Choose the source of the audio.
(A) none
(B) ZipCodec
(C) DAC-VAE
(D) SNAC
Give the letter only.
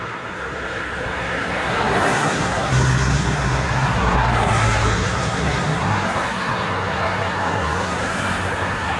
D